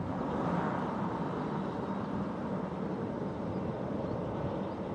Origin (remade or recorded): recorded